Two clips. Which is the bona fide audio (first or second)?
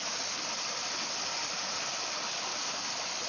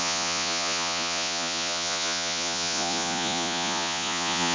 first